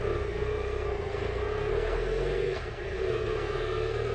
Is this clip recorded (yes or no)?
no